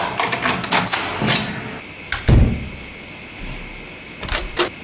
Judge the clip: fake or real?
real